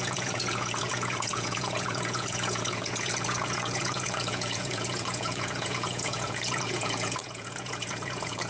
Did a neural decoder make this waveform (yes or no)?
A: yes